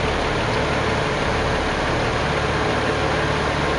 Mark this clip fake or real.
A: real